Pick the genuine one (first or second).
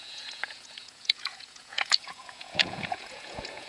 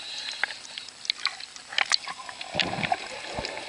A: second